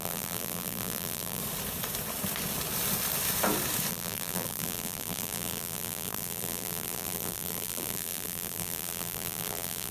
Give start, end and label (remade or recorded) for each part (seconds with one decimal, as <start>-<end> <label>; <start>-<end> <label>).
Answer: 0.0-1.4 remade; 1.4-3.9 recorded; 3.9-9.9 remade